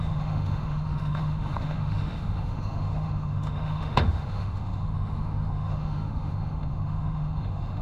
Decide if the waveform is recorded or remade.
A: remade